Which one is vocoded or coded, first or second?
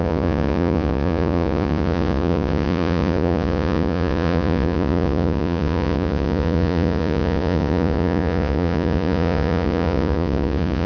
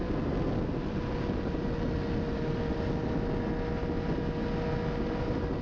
first